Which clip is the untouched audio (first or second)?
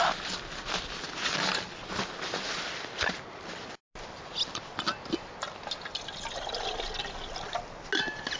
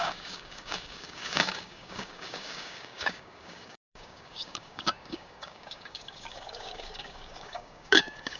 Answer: first